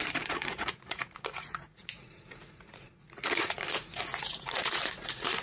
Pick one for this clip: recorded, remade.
remade